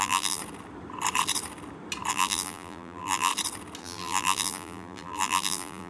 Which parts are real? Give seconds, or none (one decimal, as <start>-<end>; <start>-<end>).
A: 0.4-2.1; 3.3-3.8